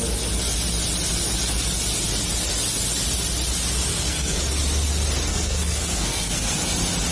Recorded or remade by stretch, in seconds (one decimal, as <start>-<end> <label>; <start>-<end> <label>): 0.0-3.9 recorded; 3.9-4.4 remade; 4.4-5.3 recorded; 5.3-6.6 remade; 6.6-7.1 recorded